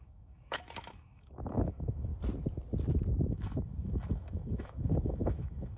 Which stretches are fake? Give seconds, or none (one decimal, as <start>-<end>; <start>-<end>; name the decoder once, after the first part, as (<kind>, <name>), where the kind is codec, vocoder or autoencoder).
0.0-2.1 (autoencoder, DAC-VAE); 3.3-5.8